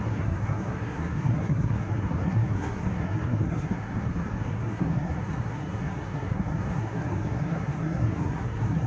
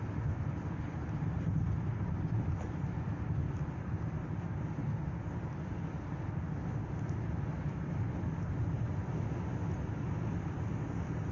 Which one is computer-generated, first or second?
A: first